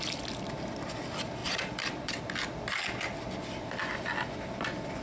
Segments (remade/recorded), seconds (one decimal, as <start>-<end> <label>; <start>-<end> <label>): 0.0-1.4 recorded; 1.4-2.2 remade; 2.2-5.0 recorded